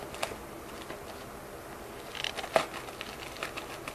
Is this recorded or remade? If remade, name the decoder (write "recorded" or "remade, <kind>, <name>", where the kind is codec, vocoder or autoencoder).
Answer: recorded